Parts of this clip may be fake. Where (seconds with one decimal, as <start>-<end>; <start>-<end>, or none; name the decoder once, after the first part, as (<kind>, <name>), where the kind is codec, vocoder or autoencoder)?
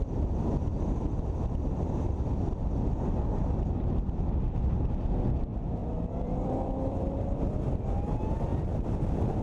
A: 5.8-7.4 (vocoder, BigVGAN v2)